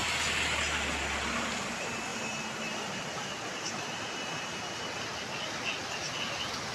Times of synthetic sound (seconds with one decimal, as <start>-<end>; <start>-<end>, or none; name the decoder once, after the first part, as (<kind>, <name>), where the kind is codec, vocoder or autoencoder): none